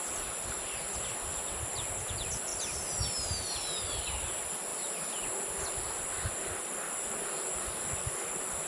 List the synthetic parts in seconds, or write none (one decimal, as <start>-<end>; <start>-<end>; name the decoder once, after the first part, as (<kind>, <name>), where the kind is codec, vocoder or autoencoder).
none